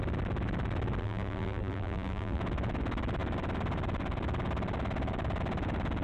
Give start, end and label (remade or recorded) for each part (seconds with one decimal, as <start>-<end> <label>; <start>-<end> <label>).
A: 0.0-1.0 recorded; 1.0-2.4 remade; 2.4-6.0 recorded